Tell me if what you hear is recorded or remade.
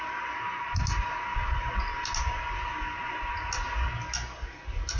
recorded